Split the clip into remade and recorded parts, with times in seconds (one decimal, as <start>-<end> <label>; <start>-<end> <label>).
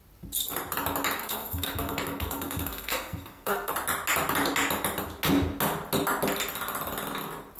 0.0-1.2 recorded; 1.2-3.7 remade; 3.7-7.6 recorded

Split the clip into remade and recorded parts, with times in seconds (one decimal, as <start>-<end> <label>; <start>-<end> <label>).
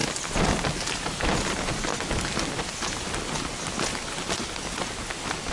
0.0-5.5 recorded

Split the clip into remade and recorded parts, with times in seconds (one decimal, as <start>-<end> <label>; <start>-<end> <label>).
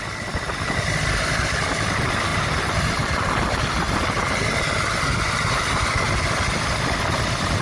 0.0-7.6 recorded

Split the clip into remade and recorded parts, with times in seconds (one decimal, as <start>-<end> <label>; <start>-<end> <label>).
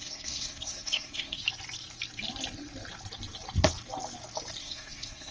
0.0-1.4 remade; 1.4-4.6 recorded; 4.6-5.3 remade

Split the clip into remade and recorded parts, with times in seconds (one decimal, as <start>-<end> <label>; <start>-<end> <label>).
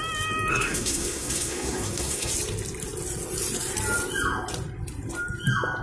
0.0-0.5 recorded; 0.5-2.3 remade; 2.3-5.8 recorded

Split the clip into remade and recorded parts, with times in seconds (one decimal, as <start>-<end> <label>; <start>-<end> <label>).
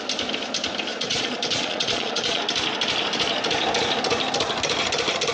0.0-0.9 recorded; 0.9-2.4 remade; 2.4-5.3 recorded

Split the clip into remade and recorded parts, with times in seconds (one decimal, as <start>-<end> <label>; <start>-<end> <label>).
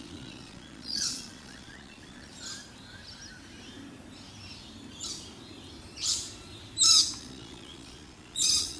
0.0-2.3 remade; 2.3-7.2 recorded; 7.2-8.8 remade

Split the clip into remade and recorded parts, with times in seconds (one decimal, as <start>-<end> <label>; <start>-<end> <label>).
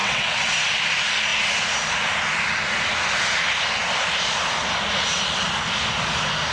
0.0-0.5 remade; 0.5-6.5 recorded